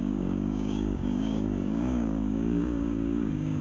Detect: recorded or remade remade